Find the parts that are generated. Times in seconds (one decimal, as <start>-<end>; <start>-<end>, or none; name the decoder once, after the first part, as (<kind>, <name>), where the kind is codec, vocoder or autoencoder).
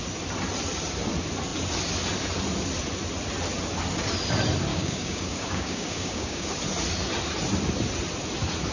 4.7-6.5 (codec, DAC)